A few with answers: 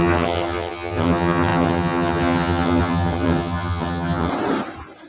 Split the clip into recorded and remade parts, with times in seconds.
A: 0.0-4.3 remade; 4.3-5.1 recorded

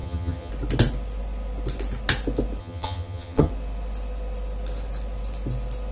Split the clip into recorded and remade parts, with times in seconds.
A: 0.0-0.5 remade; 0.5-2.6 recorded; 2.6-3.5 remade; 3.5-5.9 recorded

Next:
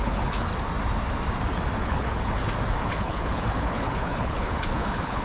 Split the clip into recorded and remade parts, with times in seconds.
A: 0.0-0.5 remade; 0.5-1.8 recorded; 1.8-2.4 remade; 2.4-2.9 recorded; 2.9-5.2 remade

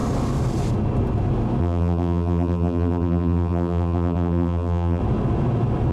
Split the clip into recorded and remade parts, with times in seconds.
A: 0.0-1.6 recorded; 1.6-5.0 remade; 5.0-5.9 recorded